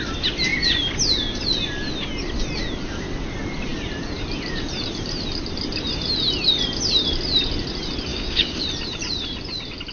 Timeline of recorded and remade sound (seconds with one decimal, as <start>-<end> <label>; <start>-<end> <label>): 0.0-8.1 recorded; 8.1-8.6 remade; 8.6-9.9 recorded